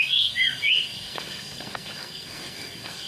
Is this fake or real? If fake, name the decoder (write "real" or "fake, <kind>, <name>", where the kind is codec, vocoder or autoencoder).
fake, codec, SNAC